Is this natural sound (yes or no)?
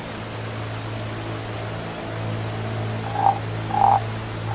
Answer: yes